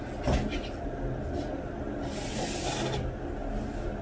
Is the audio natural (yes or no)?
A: yes